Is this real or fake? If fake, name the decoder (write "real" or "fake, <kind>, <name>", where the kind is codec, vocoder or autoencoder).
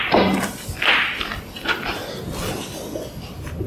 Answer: real